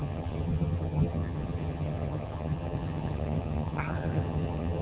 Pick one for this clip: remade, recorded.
remade